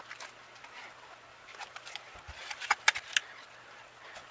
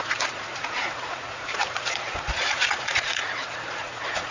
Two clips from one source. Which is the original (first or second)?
first